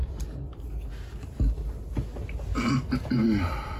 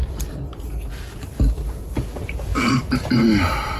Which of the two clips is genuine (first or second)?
first